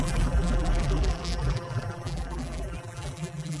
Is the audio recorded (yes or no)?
no